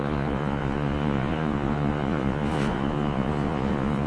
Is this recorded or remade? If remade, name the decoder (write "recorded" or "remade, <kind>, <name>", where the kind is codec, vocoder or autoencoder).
remade, vocoder, Vocos